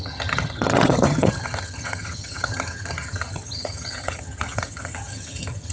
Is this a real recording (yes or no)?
no